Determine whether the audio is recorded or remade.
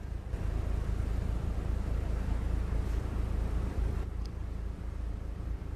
remade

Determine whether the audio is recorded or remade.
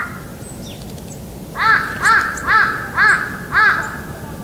recorded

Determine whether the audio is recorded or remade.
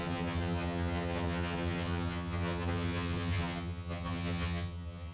remade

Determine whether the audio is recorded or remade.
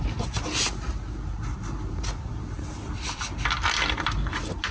recorded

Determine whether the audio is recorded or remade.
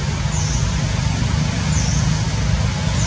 recorded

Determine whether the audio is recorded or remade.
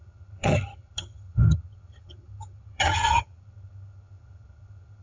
remade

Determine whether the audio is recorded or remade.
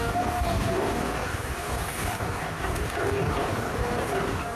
remade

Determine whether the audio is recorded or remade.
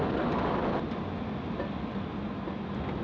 recorded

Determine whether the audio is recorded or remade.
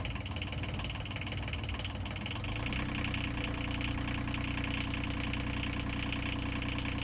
recorded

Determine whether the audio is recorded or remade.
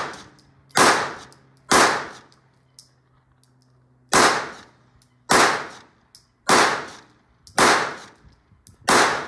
recorded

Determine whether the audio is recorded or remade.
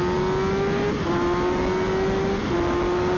recorded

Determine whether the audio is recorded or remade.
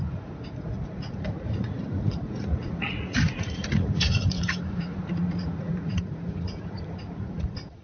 remade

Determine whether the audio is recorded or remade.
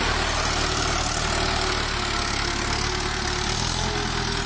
recorded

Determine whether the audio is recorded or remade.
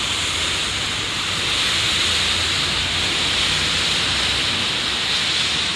recorded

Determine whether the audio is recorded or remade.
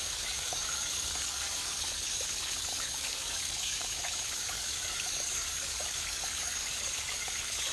remade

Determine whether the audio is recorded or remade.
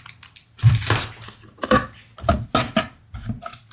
recorded